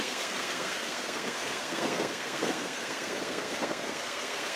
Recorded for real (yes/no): no